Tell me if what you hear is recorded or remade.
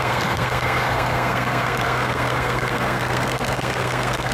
remade